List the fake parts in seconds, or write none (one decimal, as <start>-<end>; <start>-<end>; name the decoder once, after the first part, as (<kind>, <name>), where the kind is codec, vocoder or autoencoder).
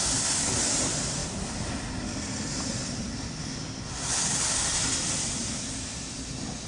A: none